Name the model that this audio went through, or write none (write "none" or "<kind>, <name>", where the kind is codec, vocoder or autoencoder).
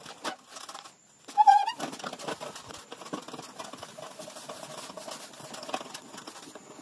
none